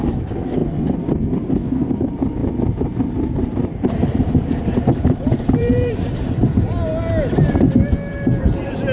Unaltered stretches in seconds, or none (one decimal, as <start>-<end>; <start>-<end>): 0.0-2.4; 6.5-8.9